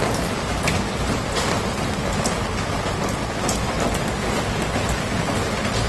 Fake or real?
real